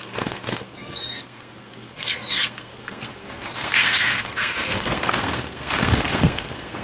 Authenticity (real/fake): fake